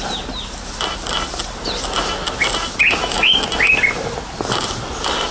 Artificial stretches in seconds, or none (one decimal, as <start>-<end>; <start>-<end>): none